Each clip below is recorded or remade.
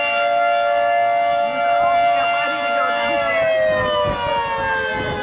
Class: recorded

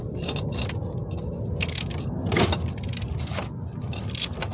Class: recorded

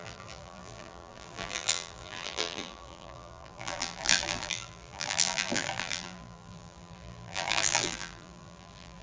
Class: remade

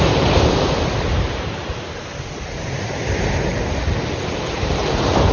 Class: remade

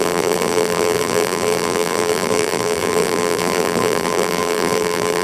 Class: remade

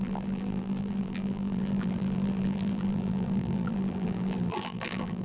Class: remade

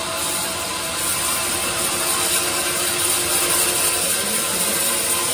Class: recorded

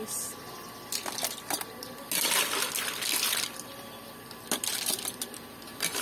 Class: recorded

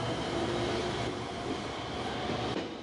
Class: remade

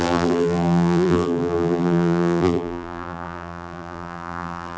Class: remade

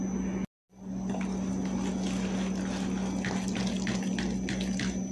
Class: recorded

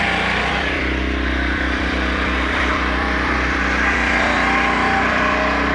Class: remade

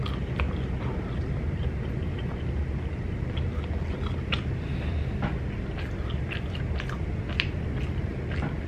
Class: recorded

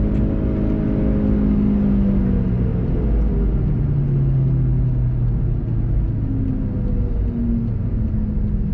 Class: recorded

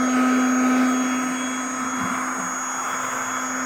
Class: recorded